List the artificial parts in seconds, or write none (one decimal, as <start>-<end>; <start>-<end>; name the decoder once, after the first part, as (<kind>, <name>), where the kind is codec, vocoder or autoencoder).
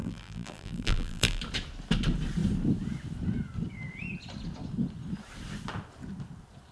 0.0-1.4 (vocoder, BigVGAN v2)